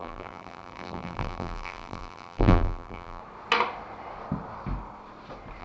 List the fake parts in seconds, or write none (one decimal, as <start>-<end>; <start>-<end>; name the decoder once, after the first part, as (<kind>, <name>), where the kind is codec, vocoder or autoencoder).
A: 0.0-3.2 (vocoder, BigVGAN v2)